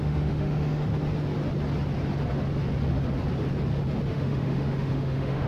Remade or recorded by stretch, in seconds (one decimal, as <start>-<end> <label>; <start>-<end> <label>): 0.0-0.9 remade; 0.9-4.1 recorded; 4.1-5.5 remade